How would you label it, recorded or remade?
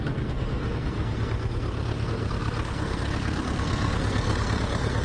remade